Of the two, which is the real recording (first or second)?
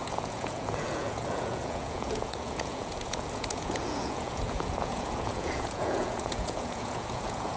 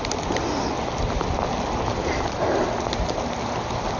second